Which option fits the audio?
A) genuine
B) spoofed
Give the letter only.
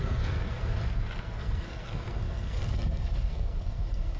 B